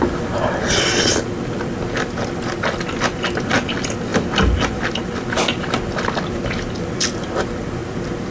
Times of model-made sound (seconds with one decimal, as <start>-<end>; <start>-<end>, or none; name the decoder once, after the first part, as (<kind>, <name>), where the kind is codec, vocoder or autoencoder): none